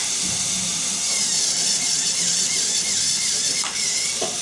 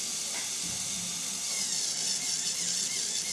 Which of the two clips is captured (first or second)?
second